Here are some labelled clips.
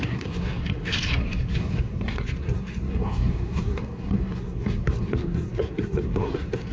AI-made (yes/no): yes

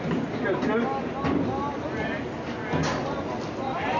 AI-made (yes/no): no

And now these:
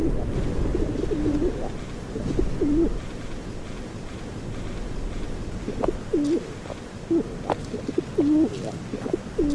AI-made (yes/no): no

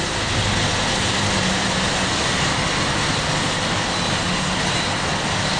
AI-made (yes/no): no